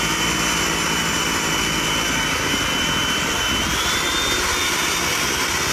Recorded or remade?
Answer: recorded